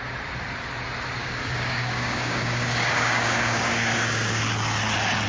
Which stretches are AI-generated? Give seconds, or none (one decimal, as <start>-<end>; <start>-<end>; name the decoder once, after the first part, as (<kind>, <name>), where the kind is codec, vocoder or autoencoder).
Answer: 1.2-4.4 (codec, DAC)